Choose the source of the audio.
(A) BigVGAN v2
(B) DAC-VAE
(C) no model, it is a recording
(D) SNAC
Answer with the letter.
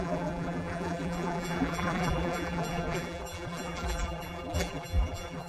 A